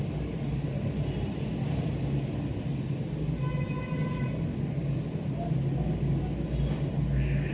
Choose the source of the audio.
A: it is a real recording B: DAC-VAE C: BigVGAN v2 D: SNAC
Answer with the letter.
A